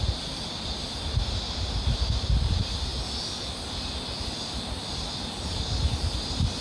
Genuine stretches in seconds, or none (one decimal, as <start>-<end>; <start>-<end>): 0.0-6.6